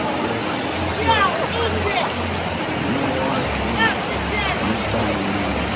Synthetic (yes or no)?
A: no